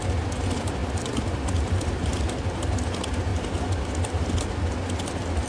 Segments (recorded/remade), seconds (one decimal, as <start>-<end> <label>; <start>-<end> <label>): 0.0-5.5 recorded